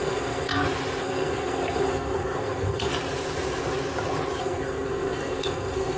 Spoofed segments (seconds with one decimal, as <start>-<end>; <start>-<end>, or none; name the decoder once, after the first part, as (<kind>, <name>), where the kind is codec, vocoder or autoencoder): 0.0-0.5 (codec, SNAC); 1.0-2.9; 4.4-6.0